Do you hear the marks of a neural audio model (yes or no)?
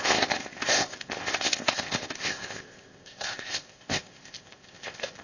yes